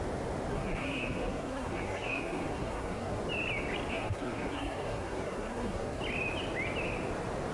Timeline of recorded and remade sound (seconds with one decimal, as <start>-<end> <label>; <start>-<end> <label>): 0.0-0.5 recorded; 0.5-3.2 remade; 3.2-3.9 recorded; 3.9-6.0 remade; 6.0-7.5 recorded